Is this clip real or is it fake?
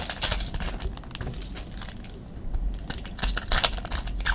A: real